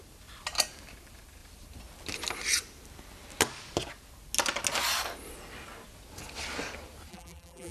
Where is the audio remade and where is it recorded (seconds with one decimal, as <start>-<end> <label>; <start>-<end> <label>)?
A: 0.0-7.1 recorded; 7.1-7.7 remade